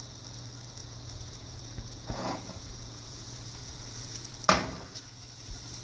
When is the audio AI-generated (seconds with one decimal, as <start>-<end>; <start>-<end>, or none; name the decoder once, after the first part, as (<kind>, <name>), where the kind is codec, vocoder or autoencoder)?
0.8-4.3 (vocoder, Vocos)